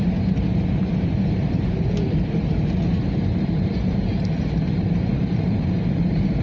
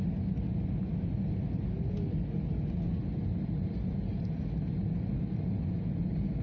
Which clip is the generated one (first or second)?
first